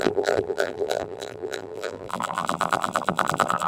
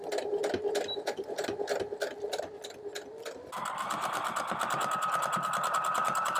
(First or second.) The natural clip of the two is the second